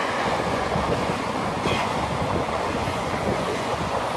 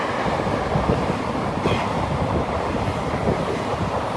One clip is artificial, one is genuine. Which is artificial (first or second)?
first